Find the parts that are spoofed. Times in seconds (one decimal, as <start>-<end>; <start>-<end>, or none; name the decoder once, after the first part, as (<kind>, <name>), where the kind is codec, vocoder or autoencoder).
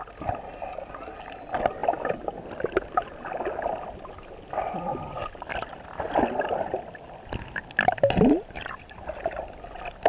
none